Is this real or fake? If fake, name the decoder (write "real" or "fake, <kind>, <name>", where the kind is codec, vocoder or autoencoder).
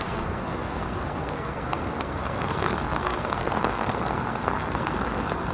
fake, codec, SNAC